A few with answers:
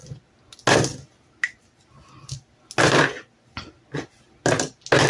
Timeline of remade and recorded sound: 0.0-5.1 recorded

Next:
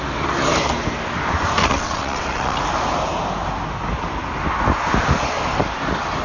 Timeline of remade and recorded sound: 0.0-1.6 recorded; 1.6-2.6 remade; 2.6-6.2 recorded

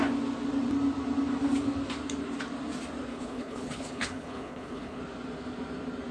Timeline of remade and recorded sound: 0.0-3.1 recorded; 3.1-5.0 remade; 5.0-6.1 recorded

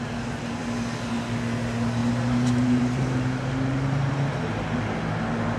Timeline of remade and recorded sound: 0.0-2.0 recorded; 2.0-4.1 remade; 4.1-5.6 recorded

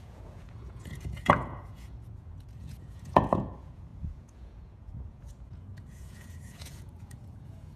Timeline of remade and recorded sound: 0.0-7.8 remade

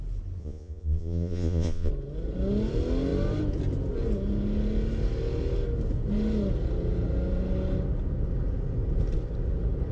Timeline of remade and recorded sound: 0.0-0.4 recorded; 0.4-1.9 remade; 1.9-9.9 recorded

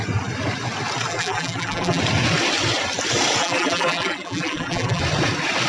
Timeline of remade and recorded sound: 0.0-1.1 recorded; 1.1-2.0 remade; 2.0-3.4 recorded; 3.4-5.0 remade; 5.0-5.7 recorded